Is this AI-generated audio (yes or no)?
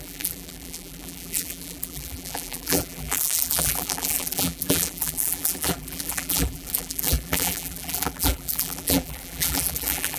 yes